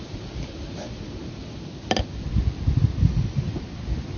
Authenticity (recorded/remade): recorded